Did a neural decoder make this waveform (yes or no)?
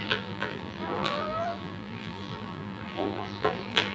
yes